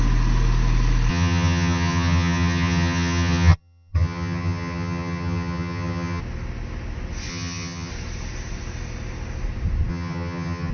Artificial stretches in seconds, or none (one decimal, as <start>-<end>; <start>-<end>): 1.1-6.2; 7.3-7.9; 9.9-10.7